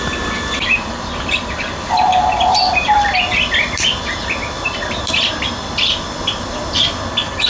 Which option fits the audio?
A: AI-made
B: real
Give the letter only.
A